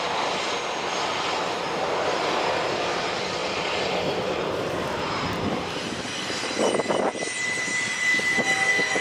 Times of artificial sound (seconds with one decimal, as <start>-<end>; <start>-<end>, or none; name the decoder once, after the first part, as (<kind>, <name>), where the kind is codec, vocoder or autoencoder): none